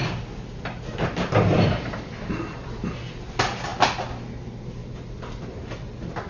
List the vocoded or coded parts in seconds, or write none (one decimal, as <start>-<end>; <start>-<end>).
none

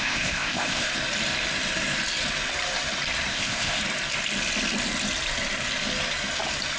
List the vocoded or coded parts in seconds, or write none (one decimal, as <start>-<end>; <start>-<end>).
0.0-0.9; 3.3-3.8

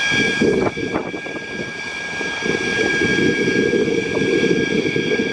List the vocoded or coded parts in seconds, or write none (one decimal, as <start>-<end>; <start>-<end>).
none